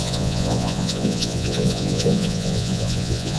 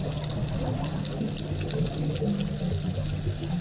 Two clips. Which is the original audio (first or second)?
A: second